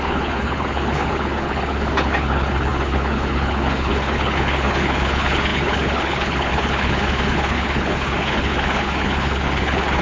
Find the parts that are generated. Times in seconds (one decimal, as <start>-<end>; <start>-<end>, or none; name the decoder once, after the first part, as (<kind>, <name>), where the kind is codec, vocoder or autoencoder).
0.0-10.0 (codec, HILCodec)